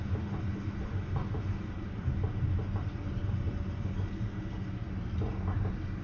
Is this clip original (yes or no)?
yes